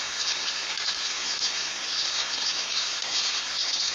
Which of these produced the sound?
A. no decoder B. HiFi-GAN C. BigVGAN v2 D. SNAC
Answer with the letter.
D